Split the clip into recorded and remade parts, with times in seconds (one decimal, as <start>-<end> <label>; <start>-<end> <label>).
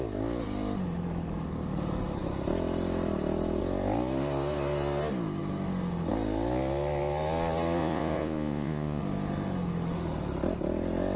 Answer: 0.0-7.8 recorded; 7.8-9.0 remade; 9.0-11.2 recorded